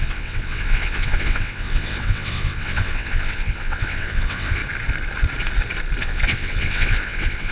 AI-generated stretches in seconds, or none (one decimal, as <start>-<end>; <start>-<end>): 0.0-4.6; 6.0-7.5